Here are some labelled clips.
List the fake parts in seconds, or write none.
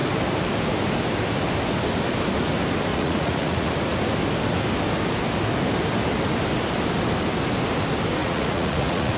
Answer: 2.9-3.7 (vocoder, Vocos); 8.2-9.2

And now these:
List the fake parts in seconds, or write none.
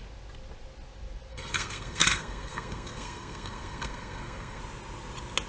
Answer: 1.3-4.6 (codec, SNAC)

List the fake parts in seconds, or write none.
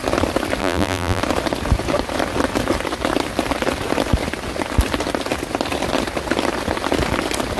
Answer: 0.6-1.2 (vocoder, BigVGAN v2)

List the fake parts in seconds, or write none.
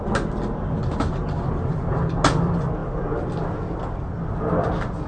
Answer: none